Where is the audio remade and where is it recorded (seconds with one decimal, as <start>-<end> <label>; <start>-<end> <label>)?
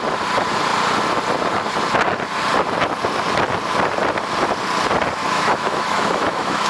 0.0-5.2 recorded; 5.2-6.7 remade